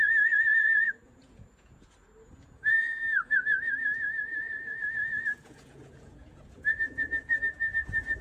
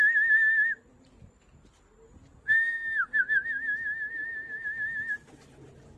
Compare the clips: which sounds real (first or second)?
second